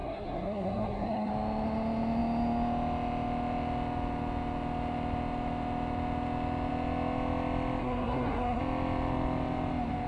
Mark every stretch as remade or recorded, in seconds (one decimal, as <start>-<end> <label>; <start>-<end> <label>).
0.0-1.3 remade; 1.3-7.8 recorded; 7.8-8.6 remade; 8.6-10.1 recorded